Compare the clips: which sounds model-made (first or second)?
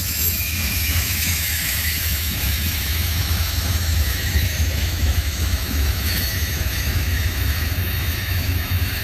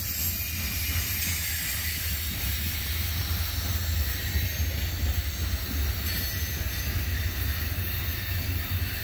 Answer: first